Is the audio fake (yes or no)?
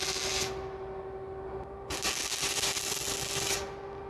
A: no